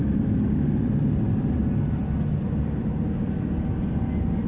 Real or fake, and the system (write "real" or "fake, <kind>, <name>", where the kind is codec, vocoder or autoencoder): real